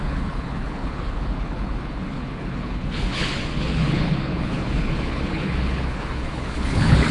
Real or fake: fake